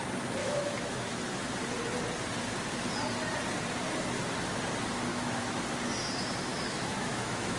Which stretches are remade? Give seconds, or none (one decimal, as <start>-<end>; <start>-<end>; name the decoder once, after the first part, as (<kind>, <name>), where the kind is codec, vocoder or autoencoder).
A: 0.4-1.2 (autoencoder, DAC-VAE); 5.1-5.6; 6.5-7.6